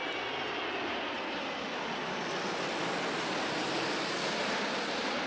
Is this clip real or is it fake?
real